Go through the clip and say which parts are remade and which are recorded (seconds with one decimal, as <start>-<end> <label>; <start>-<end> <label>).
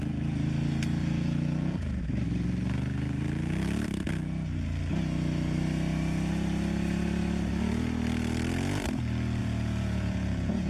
0.0-1.0 recorded; 1.0-2.0 remade; 2.0-9.4 recorded; 9.4-10.7 remade